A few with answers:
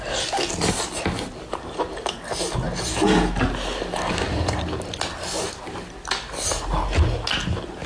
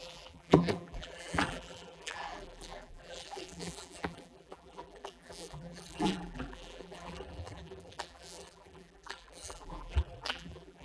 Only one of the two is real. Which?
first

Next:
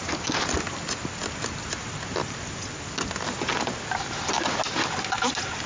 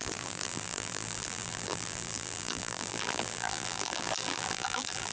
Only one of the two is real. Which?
first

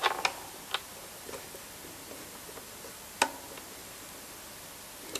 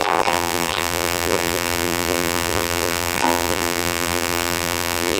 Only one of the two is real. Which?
first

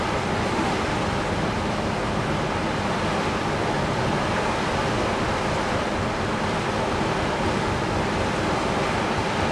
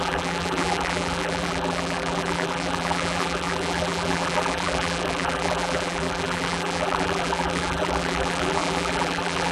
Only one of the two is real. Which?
first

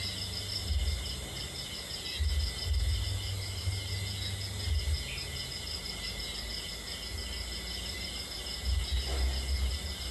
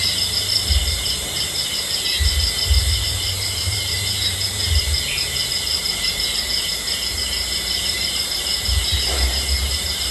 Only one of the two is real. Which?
first